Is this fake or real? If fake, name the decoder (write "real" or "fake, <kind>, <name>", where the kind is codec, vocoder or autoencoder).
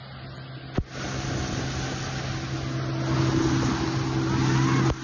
real